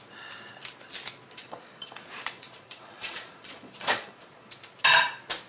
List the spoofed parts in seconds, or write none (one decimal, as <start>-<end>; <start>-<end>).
1.4-4.5